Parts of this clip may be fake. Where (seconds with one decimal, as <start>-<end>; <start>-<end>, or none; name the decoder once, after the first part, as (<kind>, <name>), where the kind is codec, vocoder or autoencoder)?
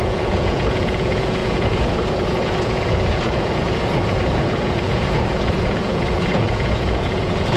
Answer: 0.0-7.6 (vocoder, Vocos)